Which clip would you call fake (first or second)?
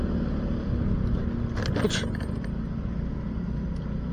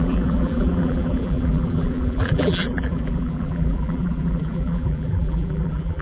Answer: second